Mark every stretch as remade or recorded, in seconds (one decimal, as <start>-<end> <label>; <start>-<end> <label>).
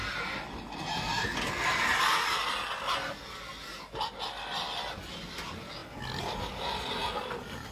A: 0.0-7.7 recorded